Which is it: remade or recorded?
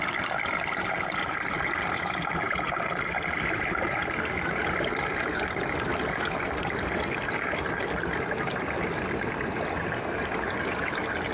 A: recorded